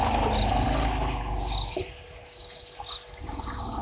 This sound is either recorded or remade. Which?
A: recorded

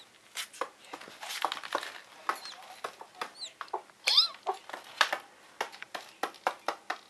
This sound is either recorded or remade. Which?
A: recorded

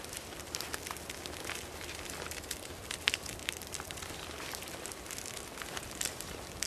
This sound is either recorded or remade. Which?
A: remade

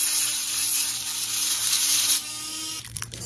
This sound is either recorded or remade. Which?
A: remade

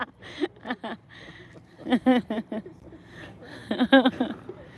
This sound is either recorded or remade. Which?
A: remade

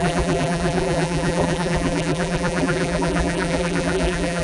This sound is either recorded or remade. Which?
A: remade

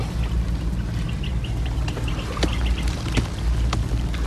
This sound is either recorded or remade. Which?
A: recorded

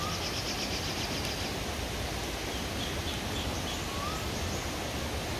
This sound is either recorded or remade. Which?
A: recorded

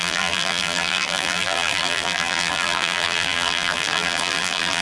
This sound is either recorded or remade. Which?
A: remade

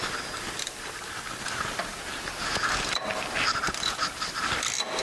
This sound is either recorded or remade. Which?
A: remade